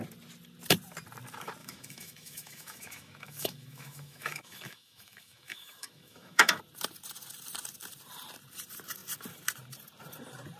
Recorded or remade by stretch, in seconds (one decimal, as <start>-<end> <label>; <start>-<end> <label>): 0.0-1.6 recorded; 1.6-6.6 remade; 6.6-10.6 recorded